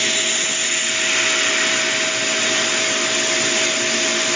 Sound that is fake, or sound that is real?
real